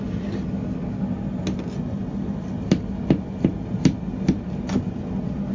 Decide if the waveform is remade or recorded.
recorded